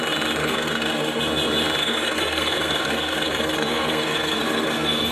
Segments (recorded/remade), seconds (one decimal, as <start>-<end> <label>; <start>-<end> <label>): 0.0-0.4 recorded; 0.4-1.2 remade; 1.2-1.8 recorded; 1.8-5.1 remade